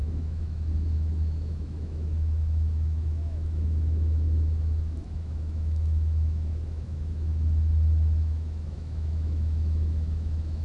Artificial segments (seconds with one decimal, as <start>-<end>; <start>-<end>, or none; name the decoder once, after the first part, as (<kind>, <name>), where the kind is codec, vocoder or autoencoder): 0.0-7.3 (autoencoder, DAC-VAE); 8.2-10.6